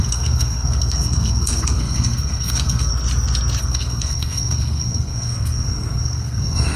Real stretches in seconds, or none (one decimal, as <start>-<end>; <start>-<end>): 2.9-3.6